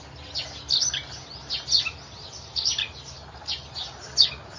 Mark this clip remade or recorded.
recorded